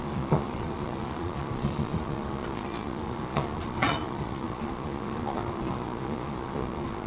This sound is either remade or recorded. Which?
remade